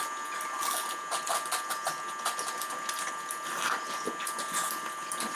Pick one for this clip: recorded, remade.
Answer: recorded